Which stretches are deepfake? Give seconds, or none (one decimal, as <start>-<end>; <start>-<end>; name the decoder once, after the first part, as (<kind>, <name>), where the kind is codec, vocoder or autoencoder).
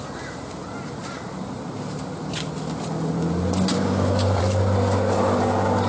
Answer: 3.7-4.4 (codec, DAC)